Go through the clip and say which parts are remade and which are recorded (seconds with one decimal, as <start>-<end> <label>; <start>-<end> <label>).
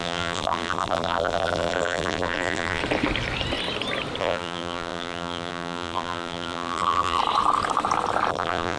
0.0-2.8 remade; 2.8-4.2 recorded; 4.2-7.2 remade; 7.2-8.3 recorded; 8.3-8.8 remade